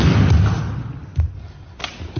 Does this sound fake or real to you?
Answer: real